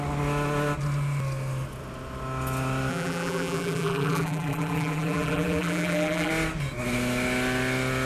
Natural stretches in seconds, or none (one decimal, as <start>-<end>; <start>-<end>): 0.0-2.9; 6.3-8.1